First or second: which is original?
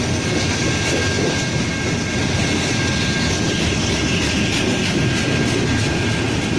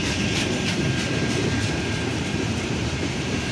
first